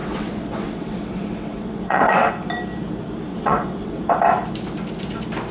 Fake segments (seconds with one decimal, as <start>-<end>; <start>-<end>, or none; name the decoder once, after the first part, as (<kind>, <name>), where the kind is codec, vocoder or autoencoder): 0.0-2.3 (vocoder, WaveNeXt); 3.3-4.0